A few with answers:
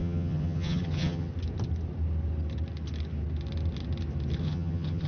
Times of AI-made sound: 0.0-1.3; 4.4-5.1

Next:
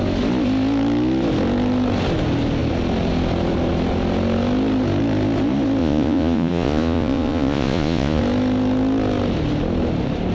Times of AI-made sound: 5.8-8.2